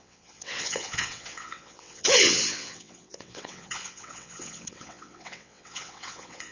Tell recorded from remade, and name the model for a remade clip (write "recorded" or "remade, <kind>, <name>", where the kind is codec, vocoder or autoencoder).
remade, vocoder, WaveNeXt